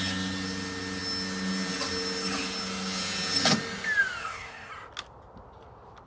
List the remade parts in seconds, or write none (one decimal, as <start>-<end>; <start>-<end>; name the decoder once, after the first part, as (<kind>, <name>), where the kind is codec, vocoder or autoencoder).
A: 4.2-4.7 (codec, SNAC)